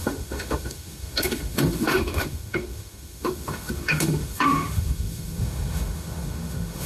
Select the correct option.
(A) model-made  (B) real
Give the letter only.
A